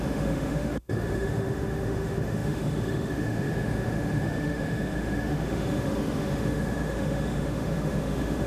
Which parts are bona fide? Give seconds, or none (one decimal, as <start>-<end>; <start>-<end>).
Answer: none

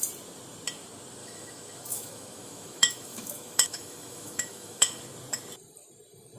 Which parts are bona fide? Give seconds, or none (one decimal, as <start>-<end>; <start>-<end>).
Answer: 0.0-1.2; 5.0-6.4

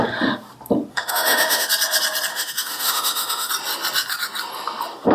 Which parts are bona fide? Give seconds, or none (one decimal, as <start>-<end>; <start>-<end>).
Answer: 0.0-0.9; 1.7-2.3; 3.5-5.1

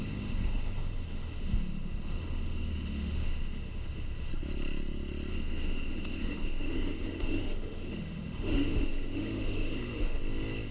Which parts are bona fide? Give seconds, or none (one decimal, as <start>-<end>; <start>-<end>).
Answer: 4.3-5.3; 10.2-10.7

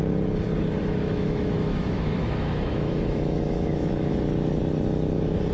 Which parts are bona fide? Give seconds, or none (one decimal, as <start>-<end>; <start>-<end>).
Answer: 0.0-0.8; 4.1-5.5

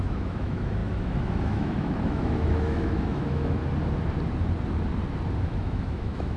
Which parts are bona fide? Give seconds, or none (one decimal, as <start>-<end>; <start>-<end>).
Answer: 3.6-5.4

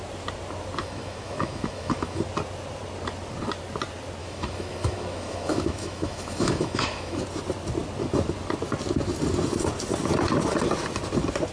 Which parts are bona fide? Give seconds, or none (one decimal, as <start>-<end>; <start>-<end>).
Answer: 0.0-0.8; 2.2-4.2; 7.2-11.5